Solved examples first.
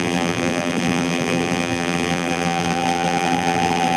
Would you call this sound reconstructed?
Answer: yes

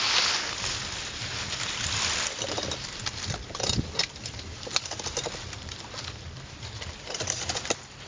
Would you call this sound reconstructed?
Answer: yes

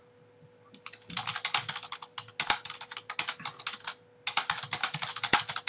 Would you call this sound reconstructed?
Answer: no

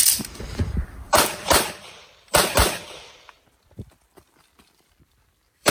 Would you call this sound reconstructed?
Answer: yes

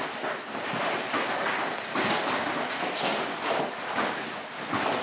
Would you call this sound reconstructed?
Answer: no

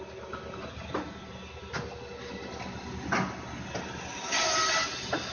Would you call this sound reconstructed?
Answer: no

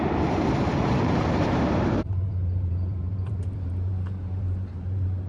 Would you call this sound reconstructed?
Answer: yes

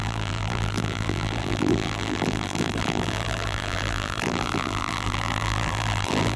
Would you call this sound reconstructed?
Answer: yes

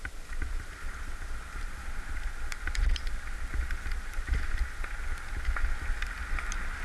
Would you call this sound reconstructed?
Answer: no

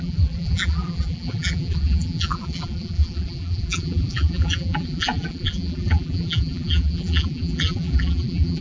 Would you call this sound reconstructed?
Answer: yes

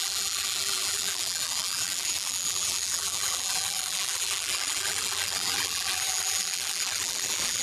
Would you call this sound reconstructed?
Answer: yes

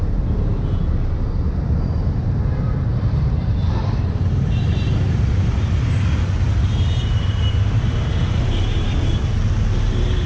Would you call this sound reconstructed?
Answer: yes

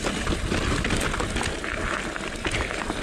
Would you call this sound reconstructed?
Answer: no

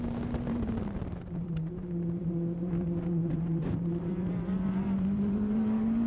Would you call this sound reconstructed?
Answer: yes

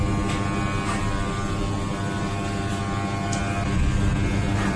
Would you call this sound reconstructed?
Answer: no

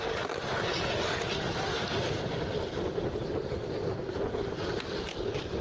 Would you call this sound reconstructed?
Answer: no